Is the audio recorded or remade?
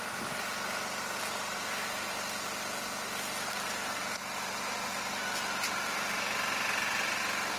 recorded